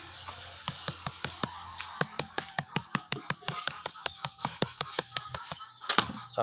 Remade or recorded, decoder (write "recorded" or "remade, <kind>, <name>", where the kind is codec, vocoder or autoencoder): remade, codec, DAC